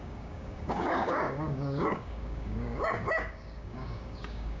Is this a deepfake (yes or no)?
yes